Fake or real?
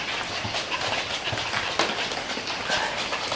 real